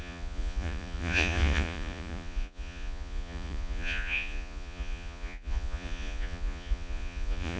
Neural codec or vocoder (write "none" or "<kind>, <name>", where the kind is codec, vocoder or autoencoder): vocoder, Vocos